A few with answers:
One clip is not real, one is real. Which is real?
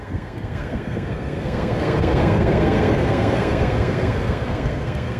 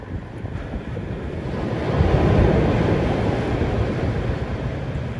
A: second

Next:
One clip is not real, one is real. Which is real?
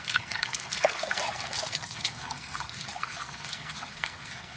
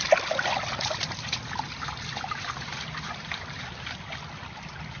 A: second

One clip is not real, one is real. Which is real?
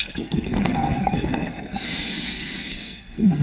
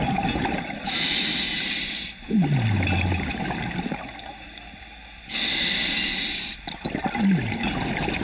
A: second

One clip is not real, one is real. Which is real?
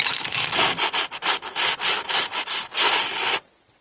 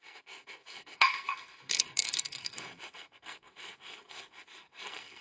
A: first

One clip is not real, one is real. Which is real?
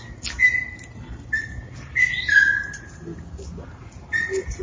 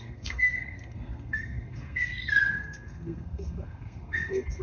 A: first